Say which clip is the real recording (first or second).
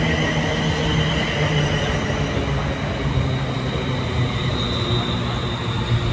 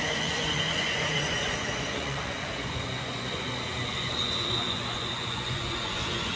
first